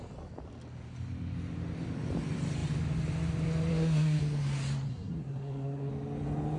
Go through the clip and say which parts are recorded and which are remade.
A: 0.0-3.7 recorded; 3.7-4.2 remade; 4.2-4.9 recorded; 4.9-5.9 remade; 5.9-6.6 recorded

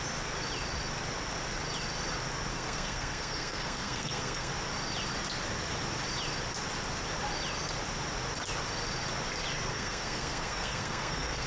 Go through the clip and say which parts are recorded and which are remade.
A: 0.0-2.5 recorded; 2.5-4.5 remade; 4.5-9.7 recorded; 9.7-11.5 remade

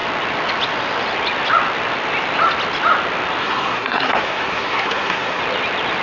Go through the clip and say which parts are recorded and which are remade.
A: 0.0-3.4 recorded; 3.4-5.4 remade; 5.4-6.0 recorded